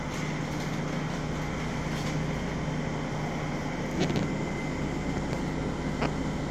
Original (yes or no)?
yes